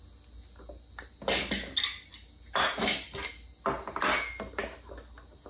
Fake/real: real